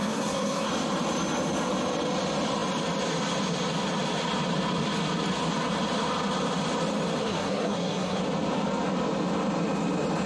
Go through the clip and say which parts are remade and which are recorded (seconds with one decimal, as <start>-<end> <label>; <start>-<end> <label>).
0.0-0.7 remade; 0.7-7.2 recorded; 7.2-8.2 remade; 8.2-10.3 recorded